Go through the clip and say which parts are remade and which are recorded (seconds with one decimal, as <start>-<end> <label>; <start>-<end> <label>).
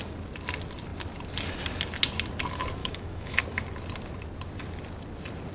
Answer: 0.0-2.8 recorded; 2.8-3.4 remade; 3.4-5.5 recorded